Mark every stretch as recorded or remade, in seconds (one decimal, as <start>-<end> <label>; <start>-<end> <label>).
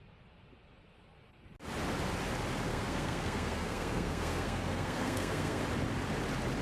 0.0-2.7 recorded; 2.7-5.6 remade; 5.6-6.6 recorded